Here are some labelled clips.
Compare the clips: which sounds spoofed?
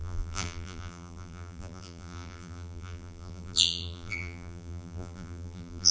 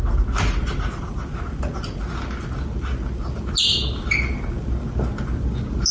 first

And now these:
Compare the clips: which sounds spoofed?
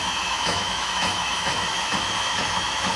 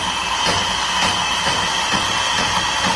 first